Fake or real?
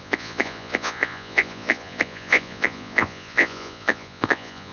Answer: fake